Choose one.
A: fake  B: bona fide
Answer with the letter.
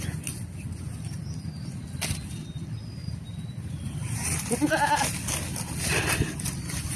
B